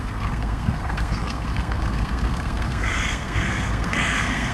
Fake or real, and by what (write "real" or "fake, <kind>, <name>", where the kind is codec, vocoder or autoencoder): fake, codec, SNAC